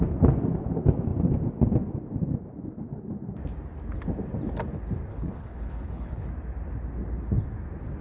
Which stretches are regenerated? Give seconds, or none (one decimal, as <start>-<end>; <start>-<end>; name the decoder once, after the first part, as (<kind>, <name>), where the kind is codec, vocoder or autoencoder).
5.1-6.3 (codec, HILCodec)

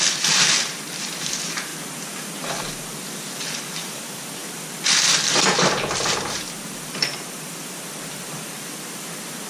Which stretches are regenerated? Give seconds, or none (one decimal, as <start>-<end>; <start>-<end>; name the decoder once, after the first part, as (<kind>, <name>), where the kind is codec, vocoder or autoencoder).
0.0-1.7 (vocoder, BigVGAN v2); 2.7-9.5

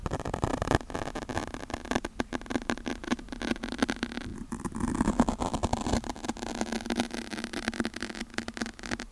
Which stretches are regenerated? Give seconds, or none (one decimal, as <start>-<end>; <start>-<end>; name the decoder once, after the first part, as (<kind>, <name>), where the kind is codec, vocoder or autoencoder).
4.3-5.1 (vocoder, BigVGAN v2)